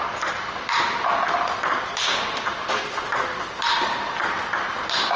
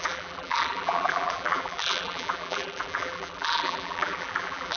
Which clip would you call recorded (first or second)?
first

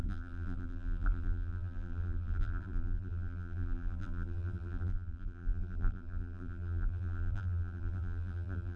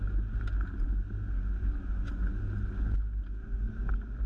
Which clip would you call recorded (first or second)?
second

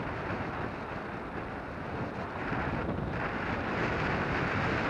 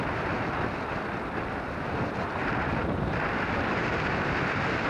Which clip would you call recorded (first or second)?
first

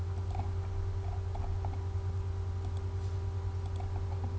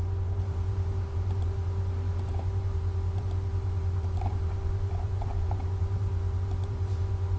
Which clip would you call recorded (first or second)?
first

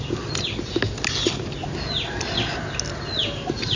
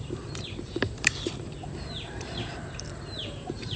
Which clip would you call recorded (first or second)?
first